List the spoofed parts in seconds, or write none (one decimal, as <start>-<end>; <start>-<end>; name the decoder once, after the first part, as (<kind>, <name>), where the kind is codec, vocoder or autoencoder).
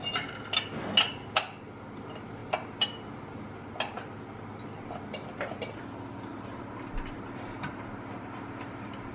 6.3-7.4 (vocoder, BigVGAN v2)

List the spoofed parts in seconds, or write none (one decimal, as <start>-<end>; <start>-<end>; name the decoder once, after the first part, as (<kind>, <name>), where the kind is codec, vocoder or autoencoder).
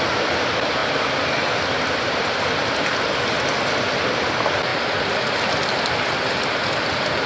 0.8-2.4 (vocoder, BigVGAN v2); 4.7-6.5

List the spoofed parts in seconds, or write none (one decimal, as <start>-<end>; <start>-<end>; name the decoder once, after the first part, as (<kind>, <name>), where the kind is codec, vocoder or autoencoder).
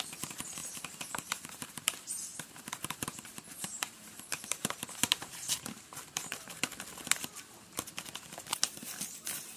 0.6-1.7 (vocoder, BigVGAN v2); 2.3-6.6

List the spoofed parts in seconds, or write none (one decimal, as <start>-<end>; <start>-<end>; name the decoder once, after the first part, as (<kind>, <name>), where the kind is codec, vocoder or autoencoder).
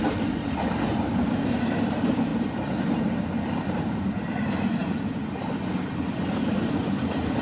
0.0-2.3 (vocoder, BigVGAN v2); 4.0-4.8; 6.2-7.4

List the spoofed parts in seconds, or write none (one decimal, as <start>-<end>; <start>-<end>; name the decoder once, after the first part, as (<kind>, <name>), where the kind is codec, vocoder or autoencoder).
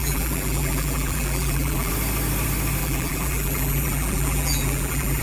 0.0-1.9 (vocoder, BigVGAN v2); 2.8-5.2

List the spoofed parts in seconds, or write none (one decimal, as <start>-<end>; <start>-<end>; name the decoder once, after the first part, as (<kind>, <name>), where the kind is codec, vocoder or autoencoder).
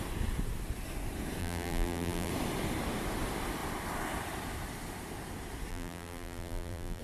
1.4-2.3 (vocoder, BigVGAN v2); 5.7-7.0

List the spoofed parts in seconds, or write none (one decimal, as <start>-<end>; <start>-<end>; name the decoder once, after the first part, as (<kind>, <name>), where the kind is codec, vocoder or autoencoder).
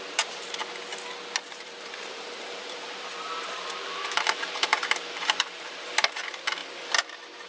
0.0-0.6 (vocoder, BigVGAN v2); 1.5-6.6